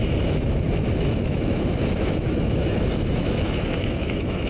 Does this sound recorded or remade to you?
remade